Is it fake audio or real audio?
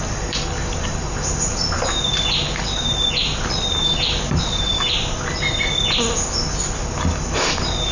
real